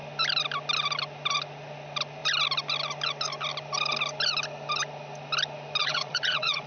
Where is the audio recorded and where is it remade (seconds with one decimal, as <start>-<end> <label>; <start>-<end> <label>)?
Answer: 0.0-5.8 recorded; 5.8-6.7 remade

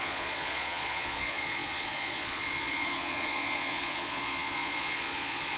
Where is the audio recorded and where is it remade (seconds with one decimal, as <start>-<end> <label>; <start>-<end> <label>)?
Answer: 0.0-5.6 remade

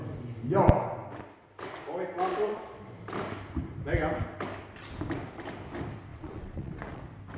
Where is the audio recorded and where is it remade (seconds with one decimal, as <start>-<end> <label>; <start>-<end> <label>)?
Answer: 0.0-2.3 recorded; 2.3-2.8 remade; 2.8-6.1 recorded; 6.1-7.0 remade; 7.0-7.4 recorded

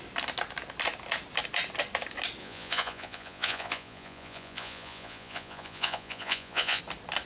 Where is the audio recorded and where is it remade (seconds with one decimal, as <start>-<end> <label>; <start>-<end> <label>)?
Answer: 0.0-2.4 recorded; 2.4-6.8 remade; 6.8-7.3 recorded

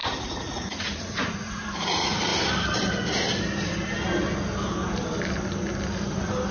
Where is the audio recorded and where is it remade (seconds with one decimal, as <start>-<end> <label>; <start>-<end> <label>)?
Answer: 0.0-2.3 remade; 2.3-6.5 recorded

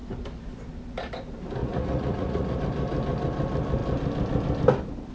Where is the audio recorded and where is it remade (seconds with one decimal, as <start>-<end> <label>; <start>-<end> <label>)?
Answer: 0.0-1.6 recorded; 1.6-2.6 remade; 2.6-5.1 recorded

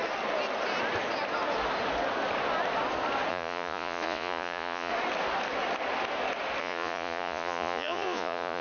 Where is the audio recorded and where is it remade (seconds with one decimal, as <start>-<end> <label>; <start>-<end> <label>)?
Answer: 0.0-3.3 recorded; 3.3-4.9 remade; 4.9-6.6 recorded; 6.6-8.6 remade

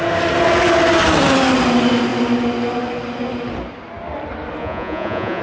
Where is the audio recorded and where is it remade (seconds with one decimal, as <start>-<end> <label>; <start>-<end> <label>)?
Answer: 0.0-4.6 recorded; 4.6-5.4 remade